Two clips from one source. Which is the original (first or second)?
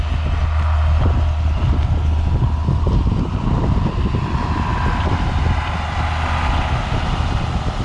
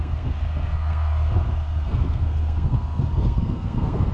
first